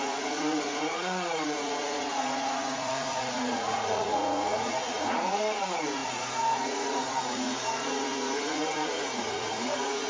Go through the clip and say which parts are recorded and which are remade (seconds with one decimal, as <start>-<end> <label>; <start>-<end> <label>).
0.0-10.1 remade